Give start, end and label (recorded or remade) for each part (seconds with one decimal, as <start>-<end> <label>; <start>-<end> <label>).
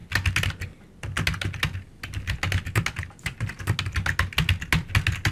0.0-5.3 recorded